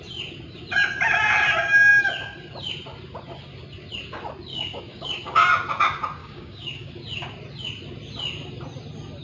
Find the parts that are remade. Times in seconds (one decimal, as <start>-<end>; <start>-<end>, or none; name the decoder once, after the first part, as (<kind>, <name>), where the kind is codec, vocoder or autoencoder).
4.5-5.5 (codec, DAC); 6.2-6.9